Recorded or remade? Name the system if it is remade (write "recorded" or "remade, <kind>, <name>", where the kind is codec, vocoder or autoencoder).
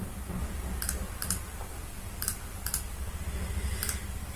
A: recorded